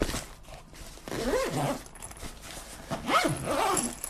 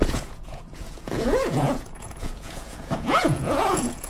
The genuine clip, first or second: first